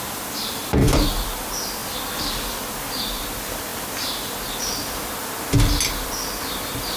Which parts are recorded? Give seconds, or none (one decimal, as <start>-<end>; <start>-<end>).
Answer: 0.0-7.0